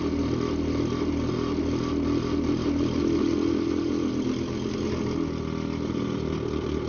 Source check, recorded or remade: recorded